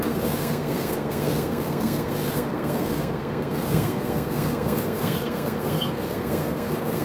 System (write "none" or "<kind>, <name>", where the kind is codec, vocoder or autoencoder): codec, SNAC